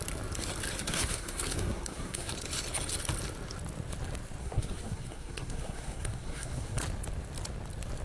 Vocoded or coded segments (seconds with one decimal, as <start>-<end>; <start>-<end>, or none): 0.8-2.3; 4.4-6.8